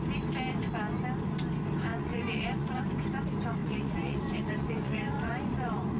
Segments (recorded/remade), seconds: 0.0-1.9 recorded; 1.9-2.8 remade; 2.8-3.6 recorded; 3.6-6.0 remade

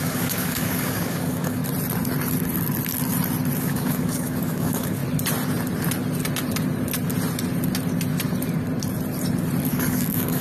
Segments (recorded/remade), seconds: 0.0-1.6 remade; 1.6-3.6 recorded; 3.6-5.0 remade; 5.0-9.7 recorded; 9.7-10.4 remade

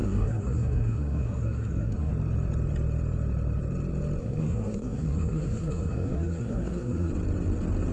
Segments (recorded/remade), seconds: 0.0-2.1 remade; 2.1-4.2 recorded; 4.2-7.1 remade; 7.1-7.9 recorded

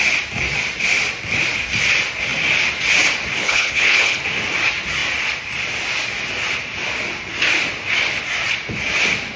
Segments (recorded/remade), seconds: 0.0-3.4 recorded; 3.4-4.2 remade; 4.2-9.4 recorded

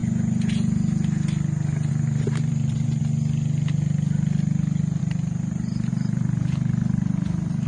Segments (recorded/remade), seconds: 0.0-1.9 recorded; 1.9-3.0 remade; 3.0-5.0 recorded; 5.0-7.7 remade

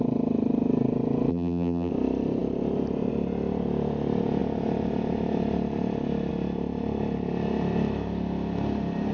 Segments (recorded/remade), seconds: 0.0-1.3 recorded; 1.3-1.9 remade; 1.9-9.1 recorded

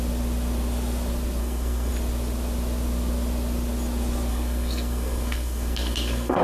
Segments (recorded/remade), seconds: 0.0-1.4 recorded; 1.4-1.9 remade; 1.9-4.3 recorded; 4.3-6.4 remade